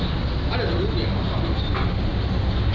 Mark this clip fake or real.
real